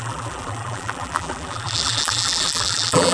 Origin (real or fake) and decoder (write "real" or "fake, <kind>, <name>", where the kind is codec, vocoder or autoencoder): fake, vocoder, BigVGAN v2